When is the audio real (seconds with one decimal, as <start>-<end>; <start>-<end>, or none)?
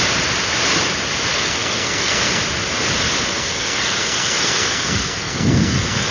0.0-1.3; 2.4-3.3